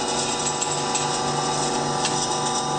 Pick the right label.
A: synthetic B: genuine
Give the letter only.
B